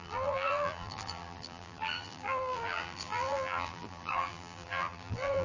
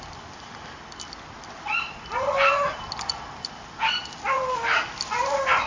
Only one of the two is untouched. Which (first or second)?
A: second